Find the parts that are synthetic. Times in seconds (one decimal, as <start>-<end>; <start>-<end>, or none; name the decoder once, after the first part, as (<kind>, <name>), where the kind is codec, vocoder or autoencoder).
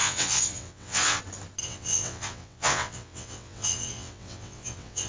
0.0-1.2 (vocoder, WaveNeXt); 1.6-5.1